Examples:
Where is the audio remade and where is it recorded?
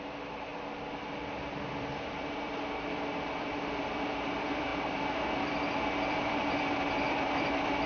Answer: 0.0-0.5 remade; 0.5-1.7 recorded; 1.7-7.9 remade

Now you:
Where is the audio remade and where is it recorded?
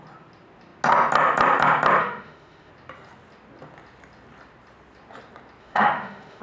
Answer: 0.0-2.0 recorded; 2.0-2.7 remade; 2.7-5.6 recorded; 5.6-6.4 remade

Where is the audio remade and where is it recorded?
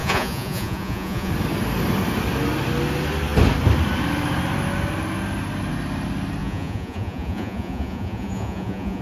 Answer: 0.0-1.3 remade; 1.3-6.4 recorded; 6.4-9.0 remade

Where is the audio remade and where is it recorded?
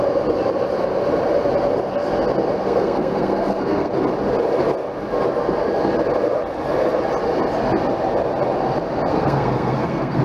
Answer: 0.0-2.6 recorded; 2.6-3.9 remade; 3.9-9.1 recorded; 9.1-10.2 remade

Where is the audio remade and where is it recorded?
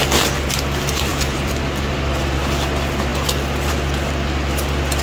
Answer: 0.0-1.1 recorded; 1.1-1.6 remade; 1.6-5.0 recorded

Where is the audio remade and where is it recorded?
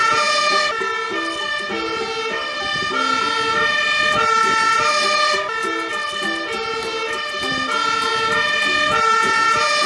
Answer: 0.0-0.6 remade; 0.6-9.1 recorded; 9.1-9.9 remade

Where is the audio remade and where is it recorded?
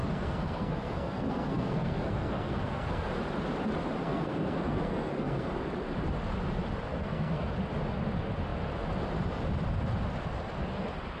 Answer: 0.0-3.1 remade; 3.1-4.0 recorded; 4.0-5.5 remade; 5.5-6.9 recorded; 6.9-7.5 remade; 7.5-11.2 recorded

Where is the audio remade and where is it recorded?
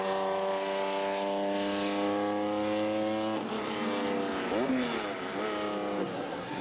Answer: 0.0-6.0 recorded; 6.0-6.6 remade